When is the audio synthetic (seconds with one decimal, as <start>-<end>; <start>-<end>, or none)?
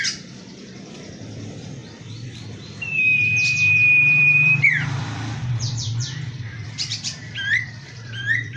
0.0-8.6